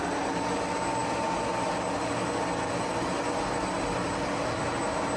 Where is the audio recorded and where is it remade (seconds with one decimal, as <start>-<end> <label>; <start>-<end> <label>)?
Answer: 0.0-5.2 recorded